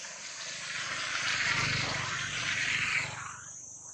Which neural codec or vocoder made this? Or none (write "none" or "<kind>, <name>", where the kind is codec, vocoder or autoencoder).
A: vocoder, BigVGAN v2